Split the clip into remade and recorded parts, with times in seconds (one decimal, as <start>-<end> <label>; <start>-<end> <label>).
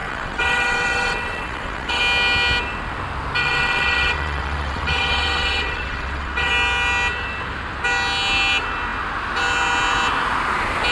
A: 0.0-2.0 remade; 2.0-3.4 recorded; 3.4-6.5 remade; 6.5-10.9 recorded